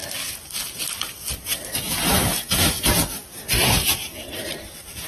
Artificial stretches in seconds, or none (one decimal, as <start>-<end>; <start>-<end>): 2.3-5.1